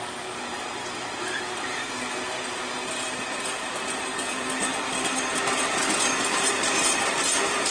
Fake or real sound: real